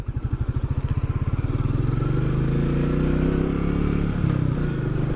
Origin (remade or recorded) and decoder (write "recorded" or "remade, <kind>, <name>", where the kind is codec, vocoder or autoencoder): recorded